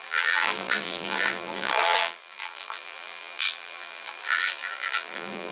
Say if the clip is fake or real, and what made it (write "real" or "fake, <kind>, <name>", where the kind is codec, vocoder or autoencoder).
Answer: fake, vocoder, BigVGAN v2